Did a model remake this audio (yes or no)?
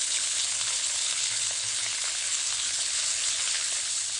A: yes